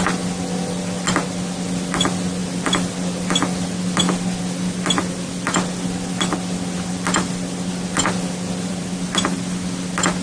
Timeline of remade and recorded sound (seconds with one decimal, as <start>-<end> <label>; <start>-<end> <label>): 0.0-10.2 recorded